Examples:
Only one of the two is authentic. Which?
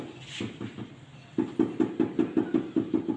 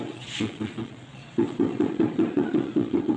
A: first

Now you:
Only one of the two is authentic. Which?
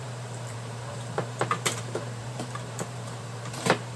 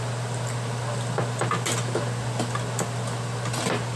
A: second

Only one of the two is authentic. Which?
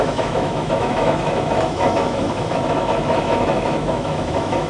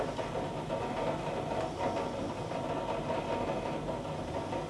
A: second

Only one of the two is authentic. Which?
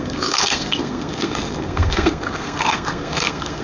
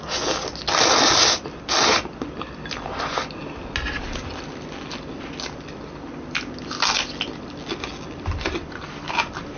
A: second